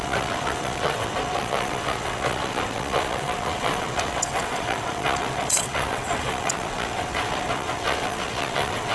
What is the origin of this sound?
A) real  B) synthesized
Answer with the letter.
B